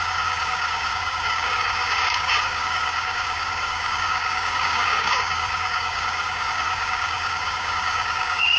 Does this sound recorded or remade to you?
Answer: remade